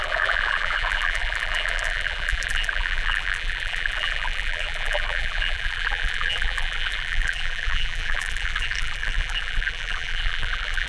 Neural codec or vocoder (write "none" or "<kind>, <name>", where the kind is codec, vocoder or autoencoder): vocoder, BigVGAN v2